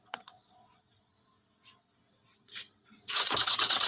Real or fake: fake